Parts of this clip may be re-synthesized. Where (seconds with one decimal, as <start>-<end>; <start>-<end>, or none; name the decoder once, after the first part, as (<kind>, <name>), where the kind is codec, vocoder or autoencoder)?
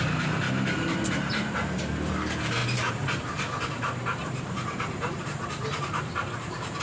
2.6-6.8 (vocoder, BigVGAN v2)